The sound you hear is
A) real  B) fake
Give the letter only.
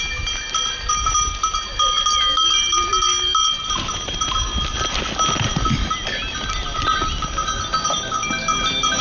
A